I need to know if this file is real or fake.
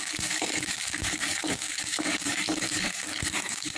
fake